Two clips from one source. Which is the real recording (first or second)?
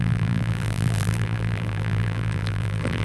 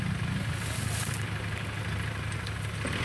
second